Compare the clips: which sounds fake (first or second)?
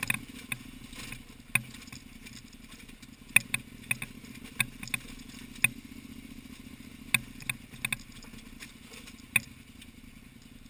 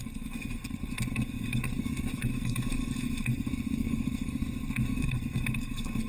second